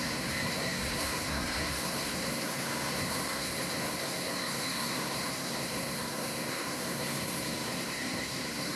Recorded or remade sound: remade